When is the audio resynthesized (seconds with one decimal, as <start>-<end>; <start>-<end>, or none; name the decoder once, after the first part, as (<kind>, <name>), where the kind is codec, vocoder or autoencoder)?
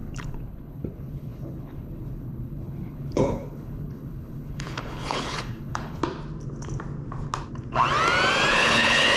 0.0-6.0 (codec, HILCodec); 8.5-9.2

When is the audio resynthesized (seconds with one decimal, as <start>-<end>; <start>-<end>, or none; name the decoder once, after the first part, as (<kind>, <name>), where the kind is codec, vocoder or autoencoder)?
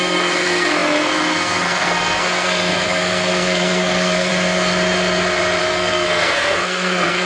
0.0-4.3 (codec, SNAC); 5.6-7.3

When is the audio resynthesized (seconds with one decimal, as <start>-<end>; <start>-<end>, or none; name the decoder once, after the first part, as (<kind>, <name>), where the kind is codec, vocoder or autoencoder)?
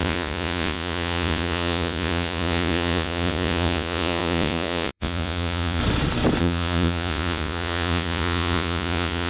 0.0-5.8 (vocoder, Vocos); 6.4-9.3